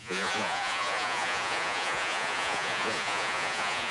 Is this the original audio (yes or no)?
no